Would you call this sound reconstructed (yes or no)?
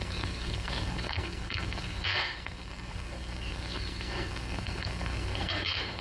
yes